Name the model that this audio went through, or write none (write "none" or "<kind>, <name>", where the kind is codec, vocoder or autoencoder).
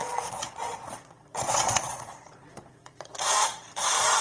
vocoder, Vocos